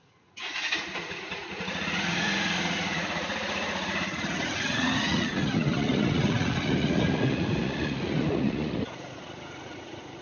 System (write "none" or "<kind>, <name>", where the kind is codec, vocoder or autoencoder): vocoder, Vocos